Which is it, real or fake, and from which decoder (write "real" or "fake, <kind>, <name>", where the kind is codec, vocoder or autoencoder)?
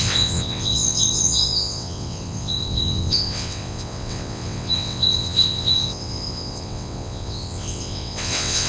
fake, vocoder, WaveNeXt